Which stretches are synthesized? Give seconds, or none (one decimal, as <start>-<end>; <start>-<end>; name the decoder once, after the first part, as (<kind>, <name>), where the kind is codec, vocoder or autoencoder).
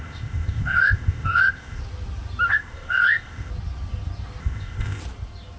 0.0-1.8 (codec, ZipCodec); 2.5-3.5; 4.4-5.0